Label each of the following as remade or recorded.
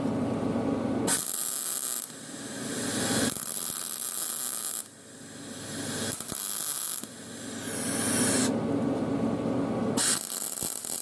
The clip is recorded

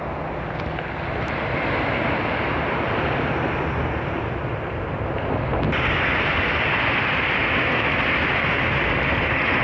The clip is recorded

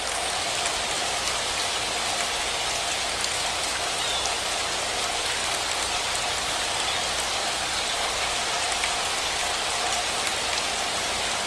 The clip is recorded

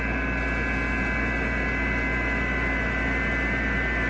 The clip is recorded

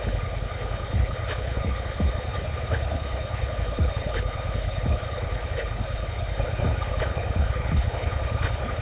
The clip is remade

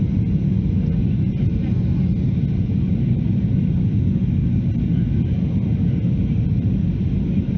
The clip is recorded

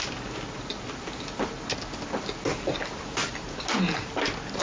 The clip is recorded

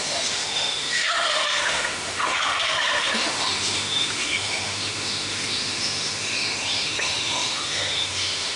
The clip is remade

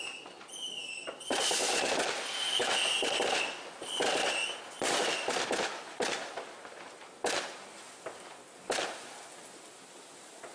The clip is recorded